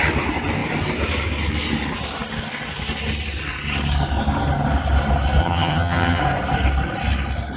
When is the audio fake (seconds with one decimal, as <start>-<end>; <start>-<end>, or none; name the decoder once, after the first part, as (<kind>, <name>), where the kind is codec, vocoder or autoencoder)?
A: 5.4-6.2 (vocoder, HiFi-GAN)